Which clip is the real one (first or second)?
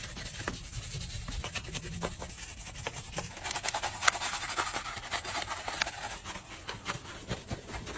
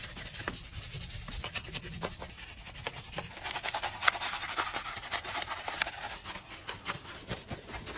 first